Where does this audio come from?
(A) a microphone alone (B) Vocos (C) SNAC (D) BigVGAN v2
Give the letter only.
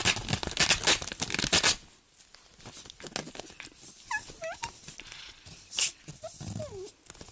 A